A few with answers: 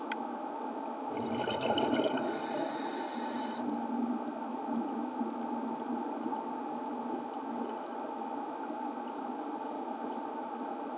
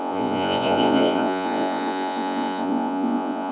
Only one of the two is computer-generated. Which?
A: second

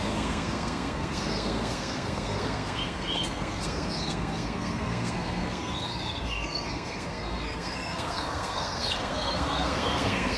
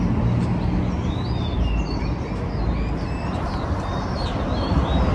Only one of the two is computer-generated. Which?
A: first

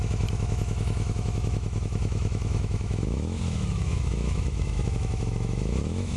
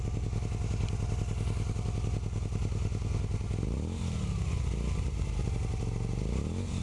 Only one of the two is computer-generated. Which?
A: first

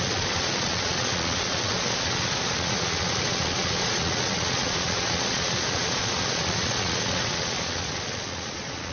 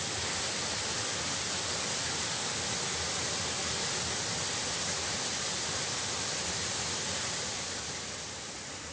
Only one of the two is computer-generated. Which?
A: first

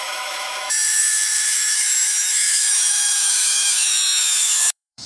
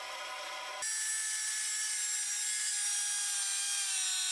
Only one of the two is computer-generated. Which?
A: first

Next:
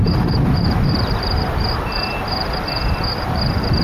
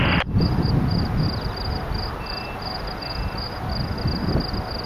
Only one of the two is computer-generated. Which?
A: first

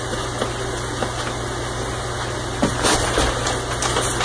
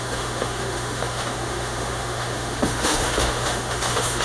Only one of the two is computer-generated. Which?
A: second